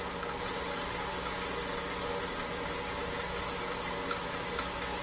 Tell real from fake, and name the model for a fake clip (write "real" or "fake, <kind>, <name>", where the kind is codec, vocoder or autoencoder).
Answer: real